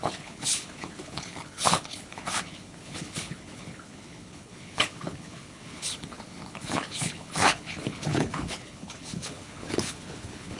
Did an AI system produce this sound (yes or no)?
yes